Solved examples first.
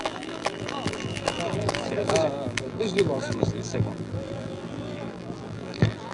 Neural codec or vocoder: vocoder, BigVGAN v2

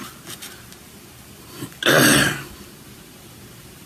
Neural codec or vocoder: none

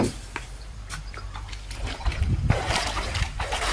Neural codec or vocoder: vocoder, BigVGAN v2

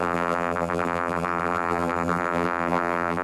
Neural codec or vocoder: vocoder, BigVGAN v2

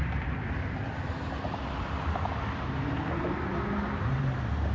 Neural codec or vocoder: none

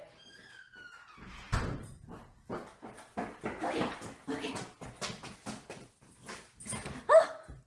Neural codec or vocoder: none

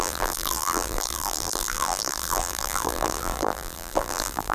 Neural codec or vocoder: vocoder, BigVGAN v2